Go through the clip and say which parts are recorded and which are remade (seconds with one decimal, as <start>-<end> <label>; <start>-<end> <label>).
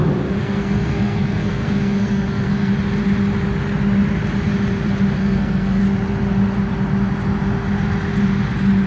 0.0-0.4 recorded; 0.4-2.7 remade; 2.7-5.2 recorded; 5.2-5.8 remade; 5.8-8.9 recorded